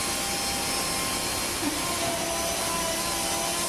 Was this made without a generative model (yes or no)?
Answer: yes